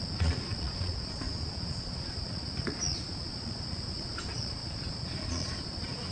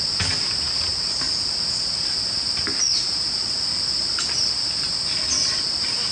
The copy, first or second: first